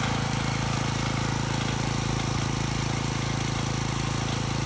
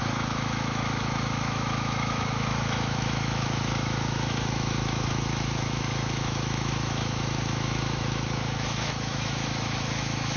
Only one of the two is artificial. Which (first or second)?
second